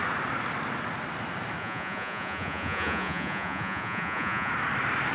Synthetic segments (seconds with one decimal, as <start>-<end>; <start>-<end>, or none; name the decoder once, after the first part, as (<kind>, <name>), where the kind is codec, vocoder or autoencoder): 1.6-4.5 (vocoder, Vocos)